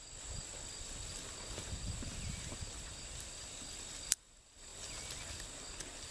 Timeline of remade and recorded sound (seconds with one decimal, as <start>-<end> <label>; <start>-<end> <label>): 0.0-6.1 recorded